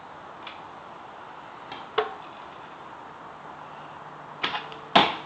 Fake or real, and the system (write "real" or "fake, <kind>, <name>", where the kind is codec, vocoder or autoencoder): real